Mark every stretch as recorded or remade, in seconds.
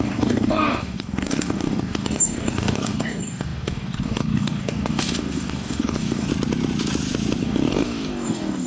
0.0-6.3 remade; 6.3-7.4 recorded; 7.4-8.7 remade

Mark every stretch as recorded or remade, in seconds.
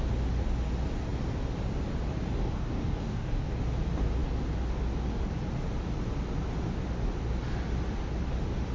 0.0-2.4 recorded; 2.4-3.6 remade; 3.6-8.7 recorded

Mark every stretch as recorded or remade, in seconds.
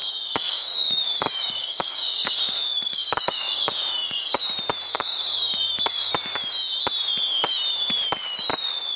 0.0-4.5 remade; 4.5-4.9 recorded; 4.9-6.1 remade; 6.1-9.0 recorded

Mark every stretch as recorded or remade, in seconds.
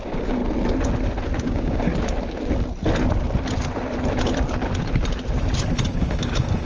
0.0-0.4 remade; 0.4-1.4 recorded; 1.4-1.9 remade; 1.9-5.9 recorded; 5.9-6.7 remade